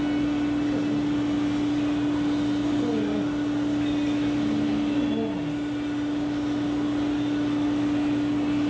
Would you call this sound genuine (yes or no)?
yes